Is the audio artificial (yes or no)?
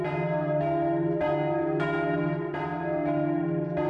no